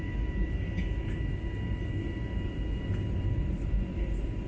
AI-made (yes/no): no